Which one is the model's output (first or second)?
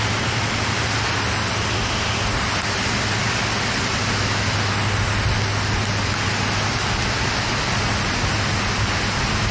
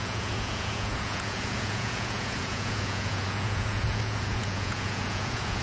second